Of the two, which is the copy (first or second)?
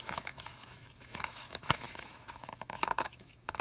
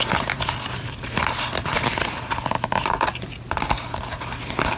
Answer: first